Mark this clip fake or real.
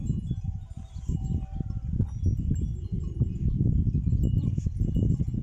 real